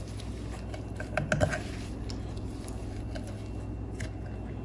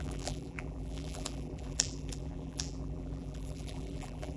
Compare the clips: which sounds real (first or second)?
first